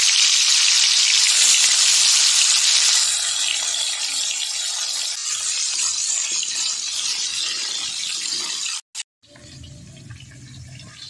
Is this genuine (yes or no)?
yes